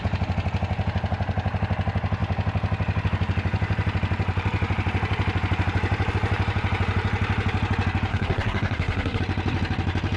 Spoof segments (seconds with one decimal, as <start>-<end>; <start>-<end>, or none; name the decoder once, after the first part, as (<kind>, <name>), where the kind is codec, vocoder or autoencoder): 8.1-9.2 (codec, SNAC)